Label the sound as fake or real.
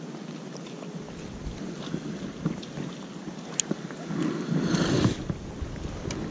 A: real